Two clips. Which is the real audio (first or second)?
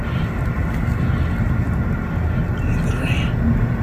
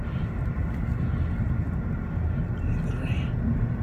first